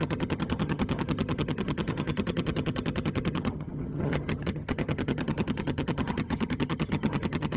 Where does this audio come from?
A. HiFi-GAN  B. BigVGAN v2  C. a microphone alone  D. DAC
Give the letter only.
A